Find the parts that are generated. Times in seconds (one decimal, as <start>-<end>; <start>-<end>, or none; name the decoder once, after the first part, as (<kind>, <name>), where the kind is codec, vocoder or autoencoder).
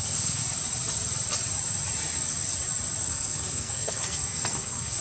0.0-0.4 (codec, SNAC); 3.1-5.0